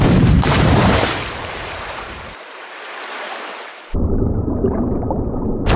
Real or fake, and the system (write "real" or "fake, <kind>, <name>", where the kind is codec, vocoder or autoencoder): fake, vocoder, BigVGAN v2